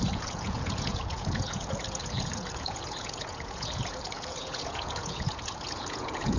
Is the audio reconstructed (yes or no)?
yes